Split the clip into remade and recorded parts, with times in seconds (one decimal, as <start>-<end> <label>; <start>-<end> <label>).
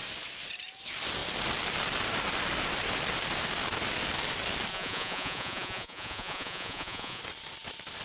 0.0-4.7 recorded; 4.7-7.2 remade; 7.2-8.0 recorded